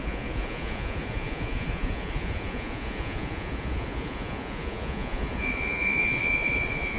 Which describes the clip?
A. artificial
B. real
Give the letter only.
A